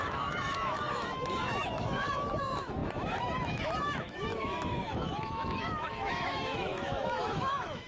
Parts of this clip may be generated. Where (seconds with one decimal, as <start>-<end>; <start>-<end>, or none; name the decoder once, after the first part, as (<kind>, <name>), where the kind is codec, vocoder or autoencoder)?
0.0-7.9 (autoencoder, DAC-VAE)